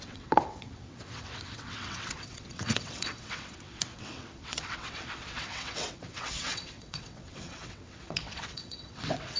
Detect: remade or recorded remade